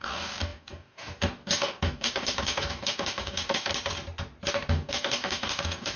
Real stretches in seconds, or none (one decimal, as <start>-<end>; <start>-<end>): 3.7-4.5